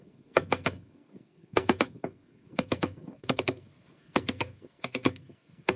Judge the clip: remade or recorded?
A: remade